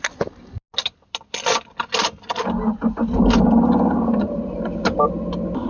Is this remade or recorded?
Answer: recorded